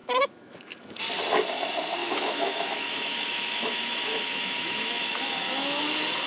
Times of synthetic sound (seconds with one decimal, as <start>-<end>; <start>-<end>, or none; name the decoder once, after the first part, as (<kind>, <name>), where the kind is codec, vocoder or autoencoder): 0.0-1.0 (autoencoder, DAC-VAE); 2.0-5.8